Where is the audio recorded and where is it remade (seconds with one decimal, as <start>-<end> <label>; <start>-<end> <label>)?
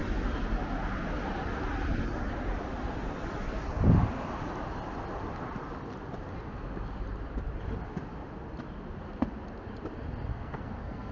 0.0-10.3 recorded; 10.3-11.1 remade